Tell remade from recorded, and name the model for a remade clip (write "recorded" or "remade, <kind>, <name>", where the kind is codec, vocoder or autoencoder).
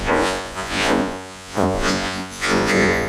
remade, vocoder, Vocos